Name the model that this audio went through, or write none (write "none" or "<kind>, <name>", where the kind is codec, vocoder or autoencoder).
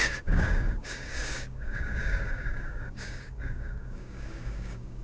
codec, DAC